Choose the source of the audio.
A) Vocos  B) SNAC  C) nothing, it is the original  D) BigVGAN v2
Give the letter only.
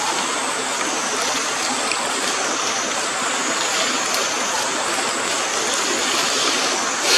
C